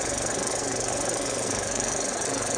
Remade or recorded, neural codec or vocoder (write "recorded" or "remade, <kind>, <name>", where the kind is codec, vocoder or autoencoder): remade, codec, SNAC